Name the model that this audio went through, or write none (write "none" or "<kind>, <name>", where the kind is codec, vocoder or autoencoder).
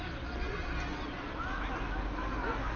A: none